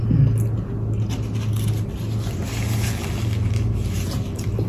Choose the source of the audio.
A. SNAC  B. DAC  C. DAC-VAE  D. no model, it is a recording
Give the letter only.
D